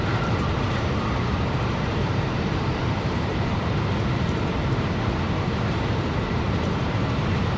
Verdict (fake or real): fake